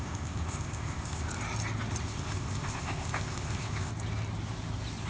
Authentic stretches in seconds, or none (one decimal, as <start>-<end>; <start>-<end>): 1.3-2.0; 3.9-5.1